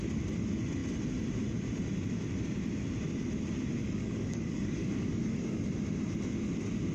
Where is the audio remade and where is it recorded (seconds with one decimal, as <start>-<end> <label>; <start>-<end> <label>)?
0.0-3.8 recorded; 3.8-5.6 remade; 5.6-6.9 recorded